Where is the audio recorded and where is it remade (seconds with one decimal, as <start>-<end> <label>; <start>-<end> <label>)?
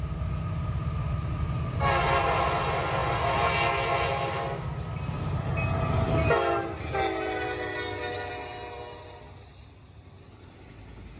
0.0-7.7 recorded; 7.7-8.3 remade; 8.3-11.2 recorded